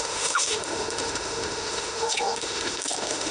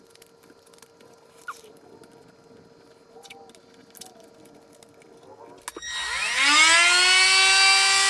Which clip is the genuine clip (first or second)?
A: second